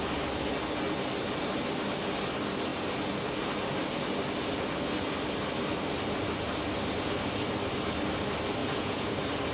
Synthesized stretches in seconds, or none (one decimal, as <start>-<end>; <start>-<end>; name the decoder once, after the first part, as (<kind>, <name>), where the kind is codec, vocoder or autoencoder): 8.6-9.1 (vocoder, Vocos)